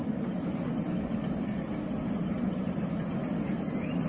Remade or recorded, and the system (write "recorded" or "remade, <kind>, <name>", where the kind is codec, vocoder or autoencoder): recorded